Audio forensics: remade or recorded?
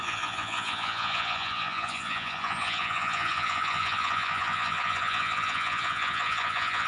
remade